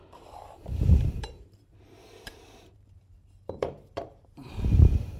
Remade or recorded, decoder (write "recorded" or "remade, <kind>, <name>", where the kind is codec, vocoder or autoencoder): remade, vocoder, BigVGAN v2